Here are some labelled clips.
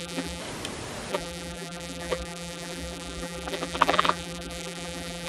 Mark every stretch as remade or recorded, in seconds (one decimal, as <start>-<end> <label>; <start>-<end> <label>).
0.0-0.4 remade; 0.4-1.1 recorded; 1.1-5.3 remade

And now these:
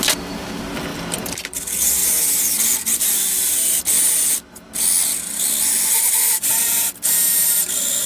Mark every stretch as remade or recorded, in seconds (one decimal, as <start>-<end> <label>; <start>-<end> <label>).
0.0-0.9 recorded; 0.9-1.6 remade; 1.6-2.0 recorded; 2.0-3.8 remade; 3.8-8.1 recorded

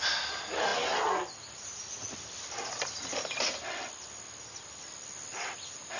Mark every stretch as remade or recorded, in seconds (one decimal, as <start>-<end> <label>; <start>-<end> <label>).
0.0-6.0 recorded

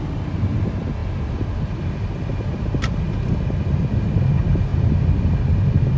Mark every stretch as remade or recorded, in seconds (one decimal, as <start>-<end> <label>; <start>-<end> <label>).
0.0-6.0 recorded

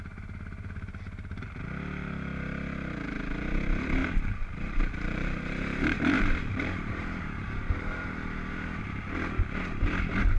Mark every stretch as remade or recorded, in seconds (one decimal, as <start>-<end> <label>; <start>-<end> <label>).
0.0-4.0 recorded; 4.0-8.8 remade; 8.8-10.4 recorded